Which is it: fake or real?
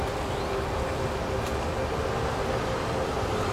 real